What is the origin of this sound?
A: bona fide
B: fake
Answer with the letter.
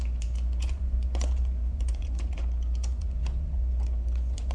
B